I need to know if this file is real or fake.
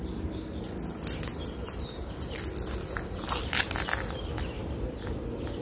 real